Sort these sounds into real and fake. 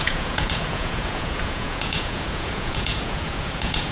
fake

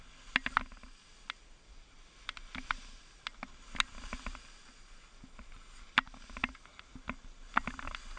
real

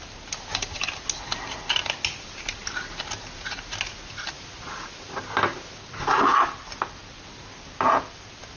real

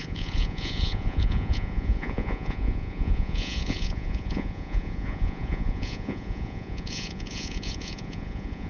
fake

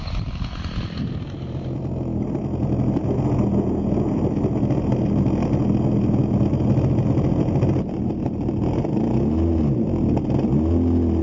real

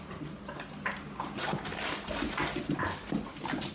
real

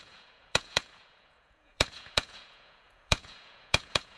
fake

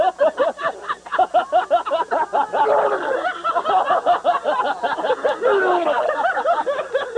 real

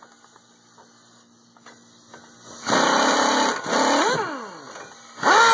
real